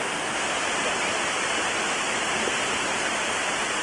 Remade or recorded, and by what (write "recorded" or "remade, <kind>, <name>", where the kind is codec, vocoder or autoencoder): recorded